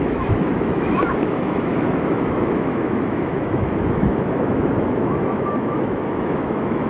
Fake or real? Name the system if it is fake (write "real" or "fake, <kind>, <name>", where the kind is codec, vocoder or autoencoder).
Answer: fake, autoencoder, DAC-VAE